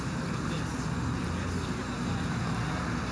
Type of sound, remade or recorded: recorded